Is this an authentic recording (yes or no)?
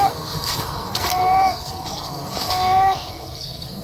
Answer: no